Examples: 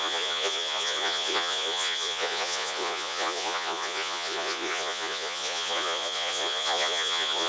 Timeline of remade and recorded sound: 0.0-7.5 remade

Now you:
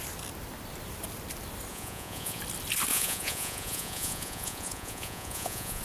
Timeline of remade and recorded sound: 0.0-1.7 recorded; 1.7-2.4 remade; 2.4-2.9 recorded; 2.9-5.8 remade

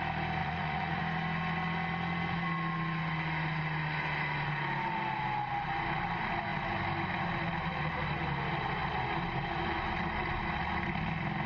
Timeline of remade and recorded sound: 0.0-0.4 recorded; 0.4-1.0 remade; 1.0-11.5 recorded